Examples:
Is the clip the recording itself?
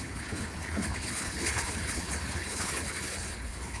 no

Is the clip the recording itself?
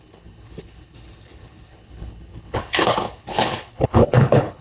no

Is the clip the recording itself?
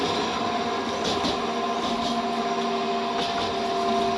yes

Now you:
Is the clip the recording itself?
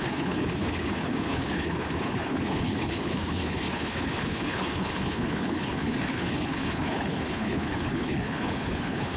no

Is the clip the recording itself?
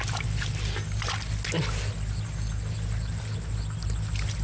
yes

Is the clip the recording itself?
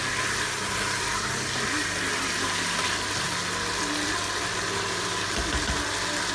yes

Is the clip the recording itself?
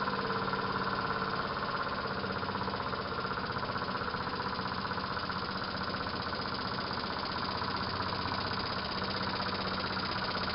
yes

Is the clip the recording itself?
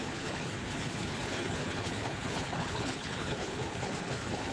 no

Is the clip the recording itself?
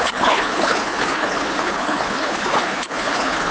no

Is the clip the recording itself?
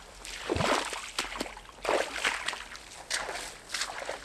yes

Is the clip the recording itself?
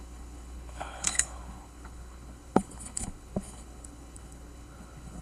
no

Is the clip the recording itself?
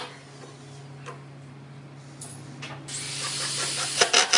yes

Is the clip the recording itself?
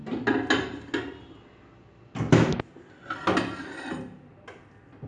yes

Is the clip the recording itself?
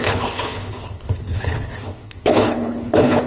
no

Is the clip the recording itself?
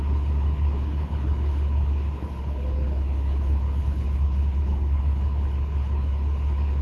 no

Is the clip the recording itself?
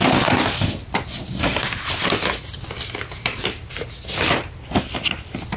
yes